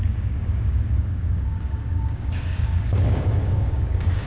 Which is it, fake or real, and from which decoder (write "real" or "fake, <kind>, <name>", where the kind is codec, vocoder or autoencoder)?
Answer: fake, codec, DAC